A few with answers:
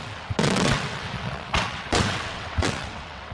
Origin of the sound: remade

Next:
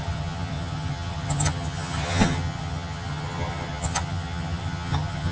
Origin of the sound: remade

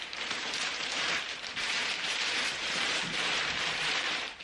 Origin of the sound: remade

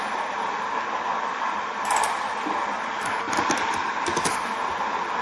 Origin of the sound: recorded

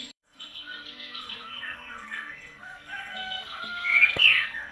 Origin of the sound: remade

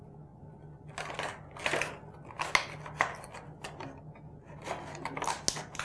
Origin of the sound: recorded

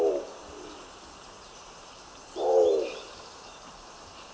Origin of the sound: recorded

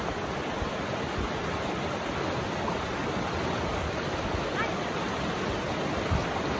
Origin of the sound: recorded